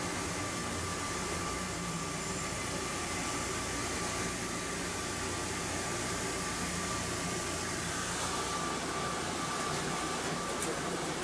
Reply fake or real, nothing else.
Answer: real